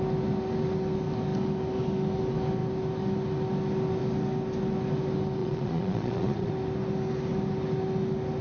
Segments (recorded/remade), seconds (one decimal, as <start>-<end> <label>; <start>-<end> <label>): 0.0-5.4 recorded; 5.4-6.5 remade; 6.5-8.4 recorded